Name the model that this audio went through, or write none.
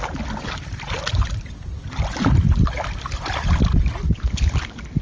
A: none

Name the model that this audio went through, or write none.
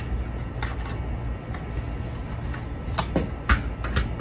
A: none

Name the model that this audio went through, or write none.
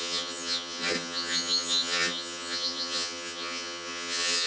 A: vocoder, HiFi-GAN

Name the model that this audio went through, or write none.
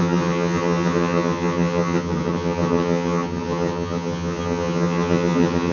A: vocoder, HiFi-GAN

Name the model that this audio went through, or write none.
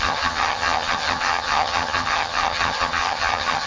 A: vocoder, HiFi-GAN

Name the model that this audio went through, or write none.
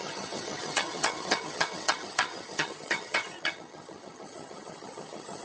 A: vocoder, HiFi-GAN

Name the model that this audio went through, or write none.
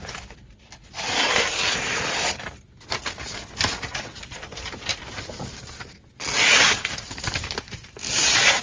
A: none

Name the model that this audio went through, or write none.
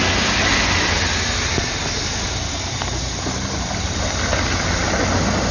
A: none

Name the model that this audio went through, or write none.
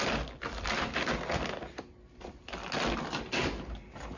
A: none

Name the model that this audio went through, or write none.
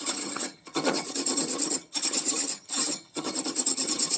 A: vocoder, HiFi-GAN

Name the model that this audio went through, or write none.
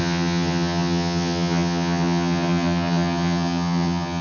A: vocoder, HiFi-GAN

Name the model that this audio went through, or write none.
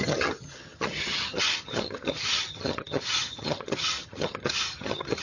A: vocoder, HiFi-GAN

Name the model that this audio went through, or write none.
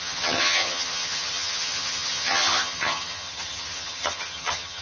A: vocoder, HiFi-GAN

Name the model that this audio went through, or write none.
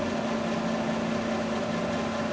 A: none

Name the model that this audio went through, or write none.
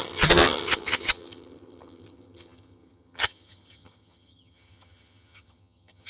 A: vocoder, HiFi-GAN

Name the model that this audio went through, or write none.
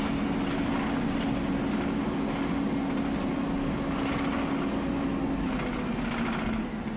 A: none